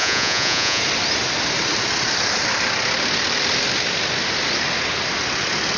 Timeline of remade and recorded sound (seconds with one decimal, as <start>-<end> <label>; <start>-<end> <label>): 0.0-0.8 remade; 0.8-5.8 recorded